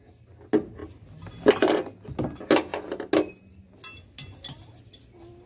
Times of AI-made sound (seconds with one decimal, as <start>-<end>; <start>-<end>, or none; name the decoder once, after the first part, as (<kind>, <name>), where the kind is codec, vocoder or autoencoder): none